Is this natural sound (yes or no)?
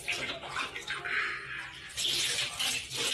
yes